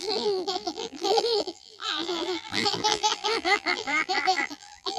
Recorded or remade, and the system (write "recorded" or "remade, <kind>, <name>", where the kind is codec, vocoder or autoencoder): remade, vocoder, BigVGAN v2